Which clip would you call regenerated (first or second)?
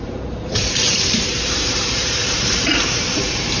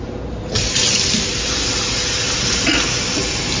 first